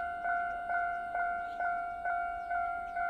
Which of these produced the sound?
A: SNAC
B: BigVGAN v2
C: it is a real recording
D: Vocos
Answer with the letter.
D